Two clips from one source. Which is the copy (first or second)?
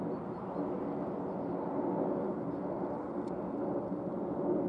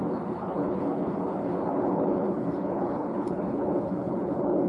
second